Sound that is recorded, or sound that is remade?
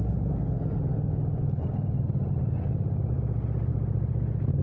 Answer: recorded